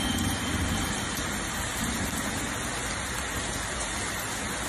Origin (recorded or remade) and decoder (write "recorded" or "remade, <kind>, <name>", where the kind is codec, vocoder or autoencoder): recorded